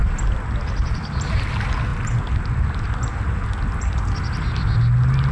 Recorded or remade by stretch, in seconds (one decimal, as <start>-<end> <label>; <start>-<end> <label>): 0.0-5.3 recorded